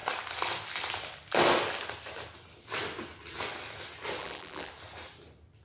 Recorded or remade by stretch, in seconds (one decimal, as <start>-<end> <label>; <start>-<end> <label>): 0.0-4.2 recorded; 4.2-4.7 remade; 4.7-5.6 recorded